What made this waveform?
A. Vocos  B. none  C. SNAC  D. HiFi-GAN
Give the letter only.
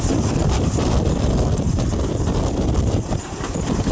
B